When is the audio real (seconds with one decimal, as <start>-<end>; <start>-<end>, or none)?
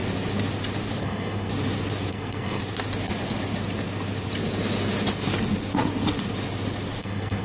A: 0.0-1.0; 1.5-2.1; 2.6-7.0